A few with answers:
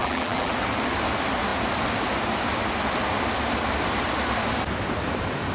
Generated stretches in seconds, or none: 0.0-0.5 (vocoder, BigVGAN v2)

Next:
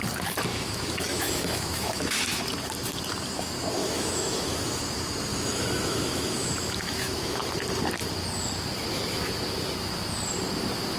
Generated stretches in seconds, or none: 0.5-2.4 (autoencoder, DAC-VAE); 3.8-4.8; 5.3-7.4

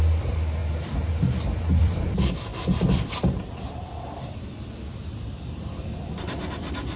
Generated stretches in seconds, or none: 0.0-0.6 (vocoder, BigVGAN v2); 1.1-7.0

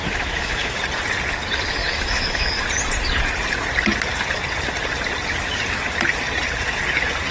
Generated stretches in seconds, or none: 0.0-0.8 (autoencoder, DAC-VAE); 1.8-2.6